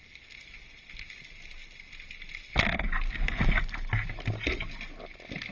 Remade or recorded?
recorded